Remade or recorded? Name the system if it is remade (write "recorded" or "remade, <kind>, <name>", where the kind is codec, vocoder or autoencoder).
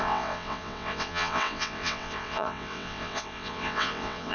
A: remade, vocoder, WaveNeXt